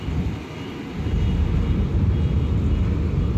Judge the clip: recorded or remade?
recorded